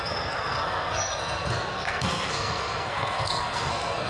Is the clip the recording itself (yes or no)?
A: no